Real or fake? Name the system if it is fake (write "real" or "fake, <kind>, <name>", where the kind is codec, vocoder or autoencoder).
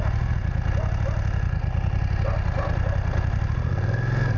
real